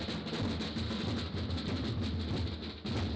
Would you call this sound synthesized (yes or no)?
no